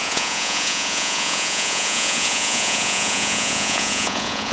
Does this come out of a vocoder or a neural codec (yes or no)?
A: yes